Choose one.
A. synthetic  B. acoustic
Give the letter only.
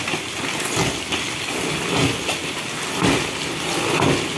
B